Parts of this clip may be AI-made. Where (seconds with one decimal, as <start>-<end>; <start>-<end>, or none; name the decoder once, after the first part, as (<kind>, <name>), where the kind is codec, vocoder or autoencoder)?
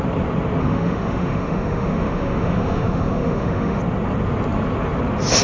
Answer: 0.6-3.8 (autoencoder, DAC-VAE)